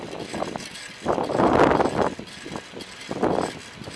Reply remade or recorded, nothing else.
recorded